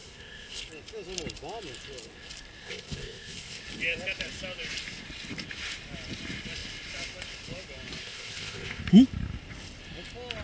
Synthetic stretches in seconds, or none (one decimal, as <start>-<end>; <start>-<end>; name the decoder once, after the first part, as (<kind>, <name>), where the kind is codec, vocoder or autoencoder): 0.0-0.6 (codec, ZipCodec); 2.6-3.6; 8.0-8.8